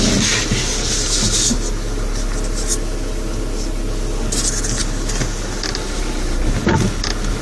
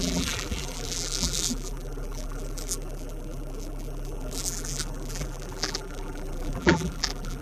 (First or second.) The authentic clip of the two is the first